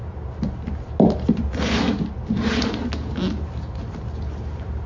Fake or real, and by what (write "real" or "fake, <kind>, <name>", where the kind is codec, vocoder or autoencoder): real